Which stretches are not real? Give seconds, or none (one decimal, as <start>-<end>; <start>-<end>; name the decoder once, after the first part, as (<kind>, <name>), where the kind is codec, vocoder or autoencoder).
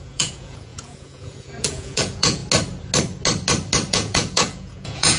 0.0-2.4 (vocoder, Vocos); 3.9-5.2